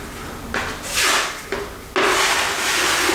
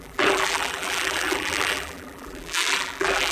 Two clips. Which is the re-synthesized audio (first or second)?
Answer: second